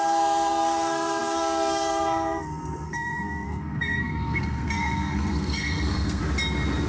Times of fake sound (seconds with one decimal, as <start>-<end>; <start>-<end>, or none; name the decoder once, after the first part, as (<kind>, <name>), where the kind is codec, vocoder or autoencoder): 0.0-6.2 (codec, SNAC)